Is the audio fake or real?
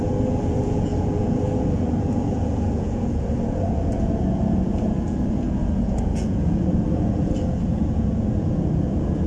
fake